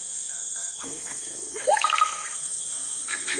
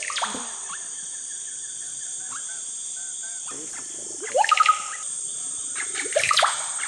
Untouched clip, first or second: second